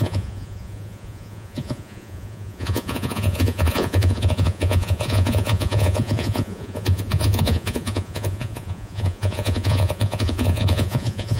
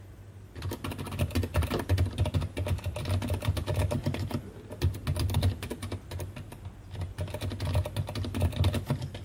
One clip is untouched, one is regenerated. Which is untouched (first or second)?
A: second